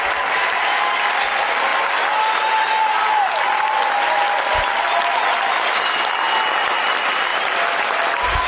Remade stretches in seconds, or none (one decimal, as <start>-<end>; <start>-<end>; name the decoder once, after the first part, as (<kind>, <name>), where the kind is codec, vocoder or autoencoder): none